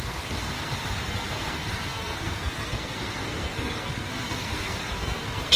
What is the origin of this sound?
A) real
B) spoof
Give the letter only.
B